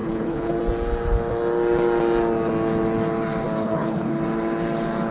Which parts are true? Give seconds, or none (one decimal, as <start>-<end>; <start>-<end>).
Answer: 0.5-3.6; 4.1-5.1